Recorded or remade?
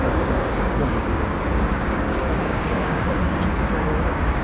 remade